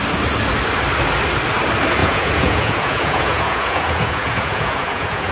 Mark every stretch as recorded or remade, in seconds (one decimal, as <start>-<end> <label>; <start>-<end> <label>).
0.0-2.0 recorded; 2.0-5.3 remade